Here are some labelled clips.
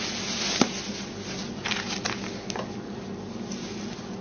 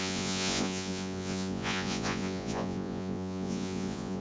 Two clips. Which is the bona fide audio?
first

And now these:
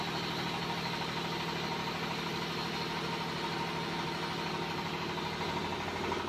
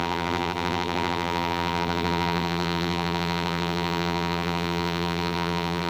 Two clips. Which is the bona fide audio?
first